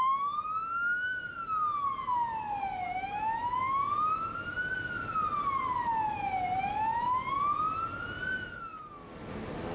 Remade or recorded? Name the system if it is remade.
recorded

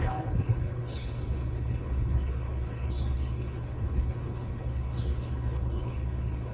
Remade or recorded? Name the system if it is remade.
remade, codec, HILCodec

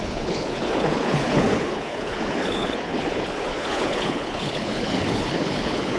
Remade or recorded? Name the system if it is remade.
remade, codec, HILCodec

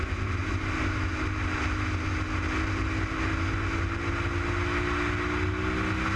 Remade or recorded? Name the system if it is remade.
recorded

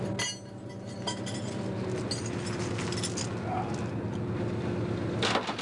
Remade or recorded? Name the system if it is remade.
recorded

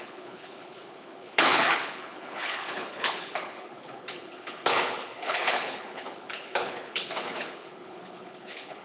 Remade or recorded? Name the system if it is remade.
remade, codec, HILCodec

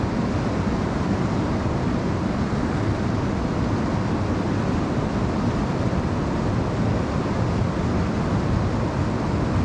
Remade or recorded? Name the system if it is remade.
recorded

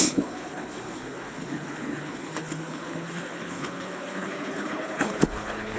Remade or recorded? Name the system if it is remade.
remade, codec, HILCodec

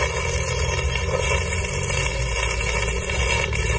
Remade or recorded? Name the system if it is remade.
recorded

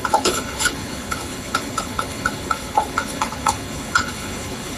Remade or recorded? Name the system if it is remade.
remade, codec, HILCodec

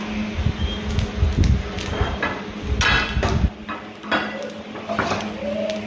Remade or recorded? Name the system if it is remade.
recorded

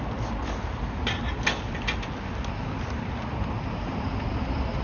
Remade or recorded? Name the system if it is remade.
recorded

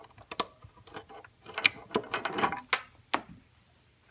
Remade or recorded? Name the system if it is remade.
recorded